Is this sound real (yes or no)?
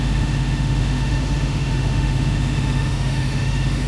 no